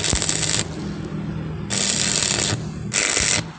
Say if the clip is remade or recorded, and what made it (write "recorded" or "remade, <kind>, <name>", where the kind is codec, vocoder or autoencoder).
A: recorded